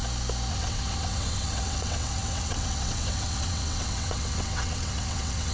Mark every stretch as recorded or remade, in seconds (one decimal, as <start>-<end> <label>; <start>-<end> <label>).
0.0-0.5 recorded; 0.5-5.5 remade